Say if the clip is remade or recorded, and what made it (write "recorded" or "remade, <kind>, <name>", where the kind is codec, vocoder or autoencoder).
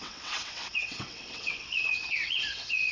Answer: remade, vocoder, WaveNeXt